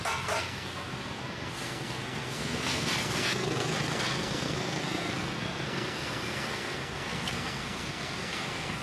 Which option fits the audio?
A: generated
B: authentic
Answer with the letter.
A